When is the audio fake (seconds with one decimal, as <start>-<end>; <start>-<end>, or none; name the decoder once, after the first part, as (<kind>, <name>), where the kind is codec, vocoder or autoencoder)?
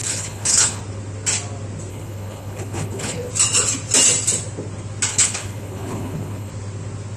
0.0-0.8 (codec, HILCodec); 1.9-3.3; 5.1-6.5